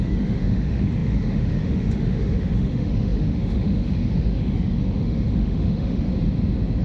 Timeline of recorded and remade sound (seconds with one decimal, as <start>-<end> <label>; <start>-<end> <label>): 0.0-6.1 remade; 6.1-6.8 recorded